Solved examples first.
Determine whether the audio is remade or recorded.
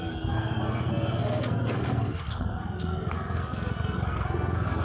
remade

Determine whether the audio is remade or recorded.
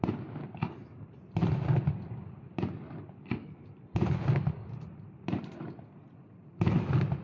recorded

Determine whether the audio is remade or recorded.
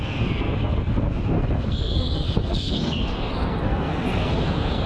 remade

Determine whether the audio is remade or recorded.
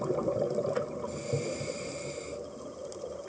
recorded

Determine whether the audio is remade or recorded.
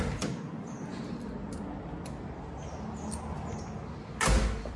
recorded